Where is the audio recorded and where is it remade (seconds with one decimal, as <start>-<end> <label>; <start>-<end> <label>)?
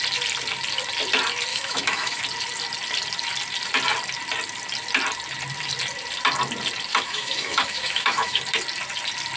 0.0-1.5 recorded; 1.5-2.2 remade; 2.2-6.9 recorded; 6.9-8.4 remade; 8.4-9.4 recorded